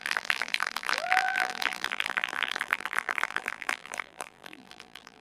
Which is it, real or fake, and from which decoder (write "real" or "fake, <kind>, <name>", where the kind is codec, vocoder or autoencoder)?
fake, vocoder, BigVGAN v2